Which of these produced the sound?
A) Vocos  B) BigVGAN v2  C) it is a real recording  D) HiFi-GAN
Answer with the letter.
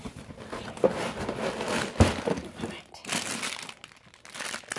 C